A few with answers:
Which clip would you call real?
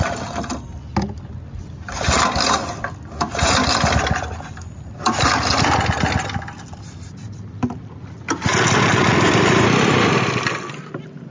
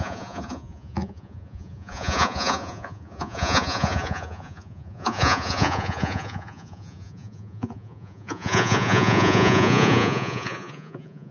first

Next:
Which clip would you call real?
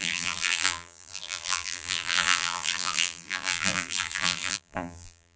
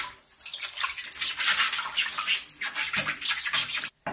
second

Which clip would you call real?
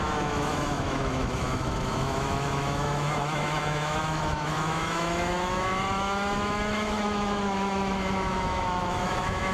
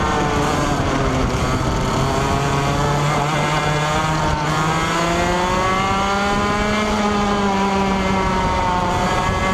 second